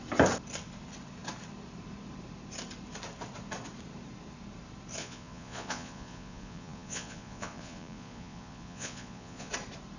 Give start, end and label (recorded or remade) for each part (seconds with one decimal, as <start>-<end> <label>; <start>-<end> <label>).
0.0-5.0 recorded; 5.0-9.5 remade; 9.5-10.0 recorded